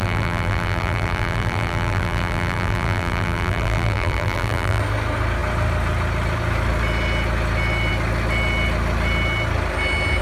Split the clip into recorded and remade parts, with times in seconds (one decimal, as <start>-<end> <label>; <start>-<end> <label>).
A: 0.0-4.8 remade; 4.8-10.2 recorded

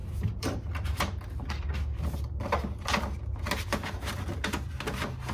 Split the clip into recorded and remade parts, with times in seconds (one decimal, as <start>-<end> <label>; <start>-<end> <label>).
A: 0.0-0.7 remade; 0.7-5.3 recorded

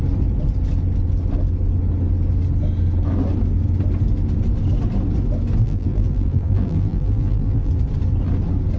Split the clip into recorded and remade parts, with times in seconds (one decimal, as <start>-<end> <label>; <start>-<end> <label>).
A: 0.0-5.6 recorded; 5.6-7.7 remade; 7.7-8.8 recorded

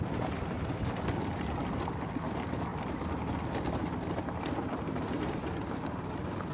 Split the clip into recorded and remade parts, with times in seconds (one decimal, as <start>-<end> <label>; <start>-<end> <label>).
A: 0.0-6.5 recorded

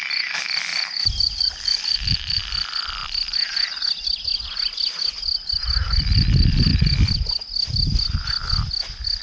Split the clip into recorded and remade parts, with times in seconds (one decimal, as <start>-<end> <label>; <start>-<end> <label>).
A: 0.0-0.7 recorded; 0.7-2.4 remade; 2.4-9.2 recorded

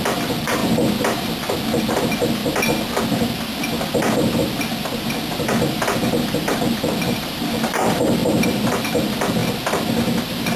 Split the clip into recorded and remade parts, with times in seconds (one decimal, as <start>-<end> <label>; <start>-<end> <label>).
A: 0.0-0.6 remade; 0.6-1.8 recorded; 1.8-2.4 remade; 2.4-7.2 recorded; 7.2-8.2 remade; 8.2-8.7 recorded; 8.7-9.4 remade; 9.4-10.6 recorded

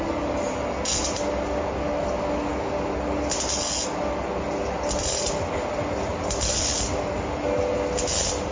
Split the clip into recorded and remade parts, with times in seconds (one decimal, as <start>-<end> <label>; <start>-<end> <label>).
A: 0.0-8.5 recorded

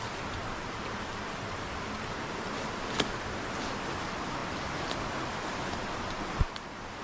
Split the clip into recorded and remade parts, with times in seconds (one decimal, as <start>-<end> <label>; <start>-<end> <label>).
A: 0.0-0.4 recorded; 0.4-1.7 remade; 1.7-7.0 recorded